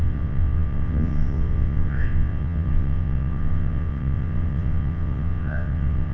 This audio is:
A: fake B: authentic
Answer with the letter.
A